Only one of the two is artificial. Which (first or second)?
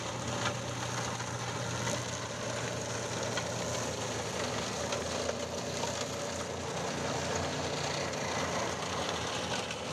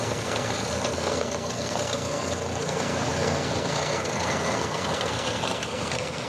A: second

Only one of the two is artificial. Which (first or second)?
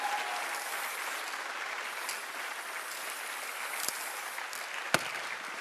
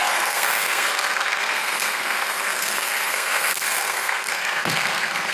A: second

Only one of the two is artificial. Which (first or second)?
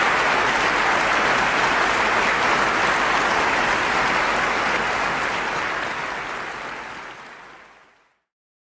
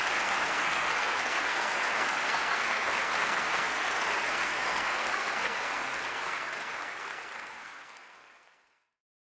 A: second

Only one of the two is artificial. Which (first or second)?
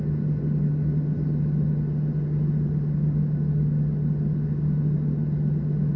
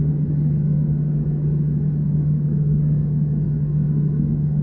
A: second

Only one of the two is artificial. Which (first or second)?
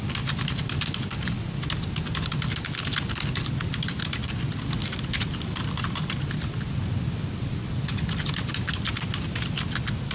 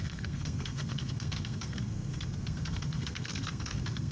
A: second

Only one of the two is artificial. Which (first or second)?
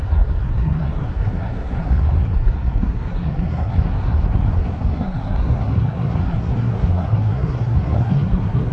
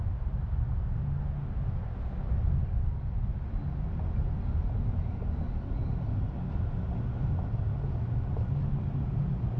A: first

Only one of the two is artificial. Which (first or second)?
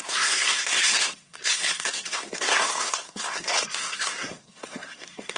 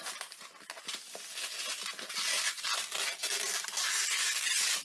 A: first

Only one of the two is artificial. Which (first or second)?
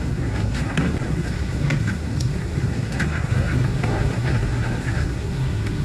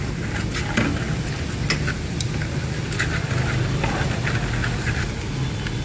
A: first